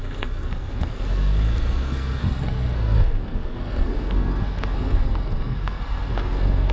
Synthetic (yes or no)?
yes